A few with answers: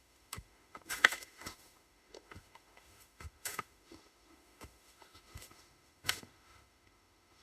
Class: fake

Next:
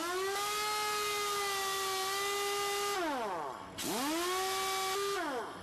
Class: real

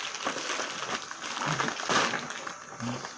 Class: real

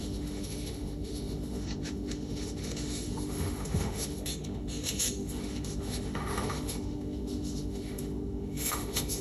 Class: fake